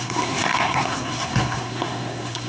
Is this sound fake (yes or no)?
yes